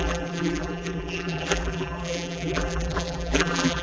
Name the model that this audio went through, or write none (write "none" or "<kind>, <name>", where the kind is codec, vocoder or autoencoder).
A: vocoder, BigVGAN v2